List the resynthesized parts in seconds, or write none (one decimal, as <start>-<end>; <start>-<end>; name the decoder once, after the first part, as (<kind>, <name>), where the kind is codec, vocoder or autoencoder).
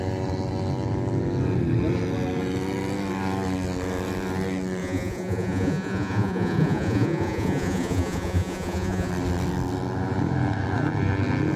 4.8-9.1 (vocoder, Vocos)